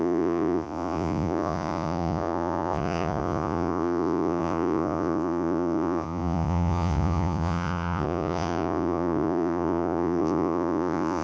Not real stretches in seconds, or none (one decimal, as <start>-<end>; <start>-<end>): 0.0-11.2

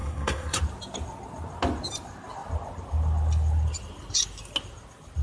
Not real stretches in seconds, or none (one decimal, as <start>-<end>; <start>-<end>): 0.0-0.6

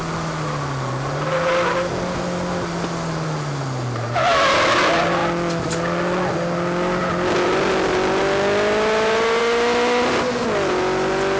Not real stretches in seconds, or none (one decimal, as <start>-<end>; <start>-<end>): none

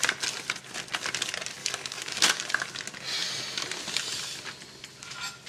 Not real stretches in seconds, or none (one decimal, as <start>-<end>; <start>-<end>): 1.6-2.4

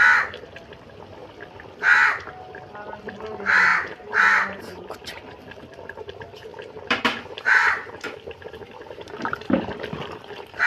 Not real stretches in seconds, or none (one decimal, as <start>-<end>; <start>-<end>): 3.7-4.6; 6.5-7.9

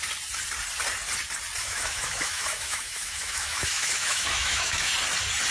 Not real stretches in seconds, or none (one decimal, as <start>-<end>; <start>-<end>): 1.6-4.9

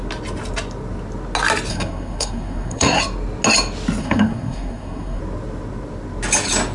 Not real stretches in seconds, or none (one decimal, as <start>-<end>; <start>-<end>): 1.7-3.0; 4.0-5.2